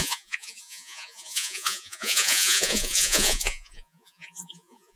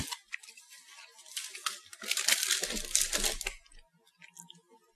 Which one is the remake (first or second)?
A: first